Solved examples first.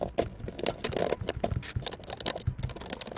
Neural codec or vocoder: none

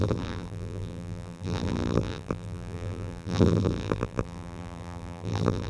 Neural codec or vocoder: vocoder, BigVGAN v2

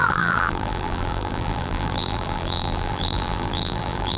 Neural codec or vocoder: vocoder, BigVGAN v2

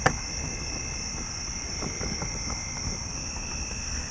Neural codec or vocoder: none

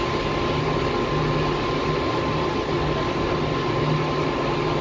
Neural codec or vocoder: none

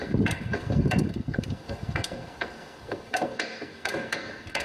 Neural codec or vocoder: codec, SNAC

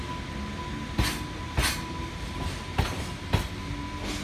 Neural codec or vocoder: none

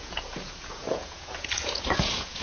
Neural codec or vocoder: vocoder, Vocos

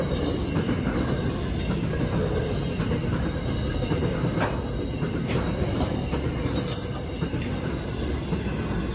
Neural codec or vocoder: none